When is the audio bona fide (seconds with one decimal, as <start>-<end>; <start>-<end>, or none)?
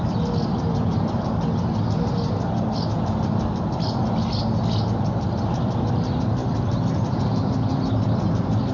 0.0-8.7